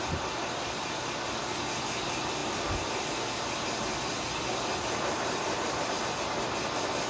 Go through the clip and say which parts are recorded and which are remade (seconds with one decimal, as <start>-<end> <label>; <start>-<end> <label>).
0.0-7.1 recorded